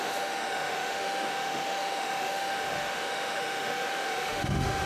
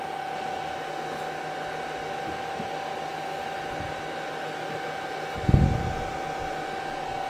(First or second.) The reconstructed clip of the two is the first